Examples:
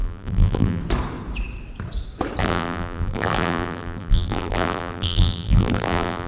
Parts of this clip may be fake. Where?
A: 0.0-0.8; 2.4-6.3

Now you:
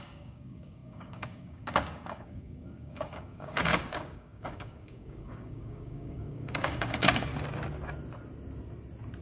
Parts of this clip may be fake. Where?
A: 0.0-7.3

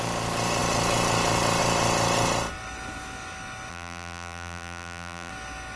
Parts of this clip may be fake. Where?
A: 3.7-5.3

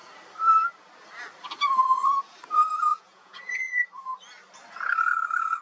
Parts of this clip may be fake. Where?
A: 2.9-3.9

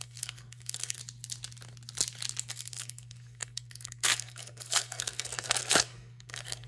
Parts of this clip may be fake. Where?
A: 0.0-1.0; 2.5-6.7